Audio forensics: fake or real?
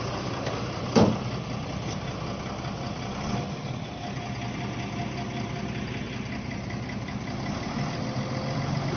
real